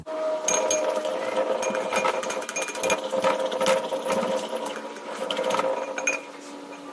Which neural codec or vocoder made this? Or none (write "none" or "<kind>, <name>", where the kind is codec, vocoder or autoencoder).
none